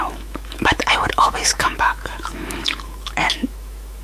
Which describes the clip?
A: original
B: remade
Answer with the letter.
B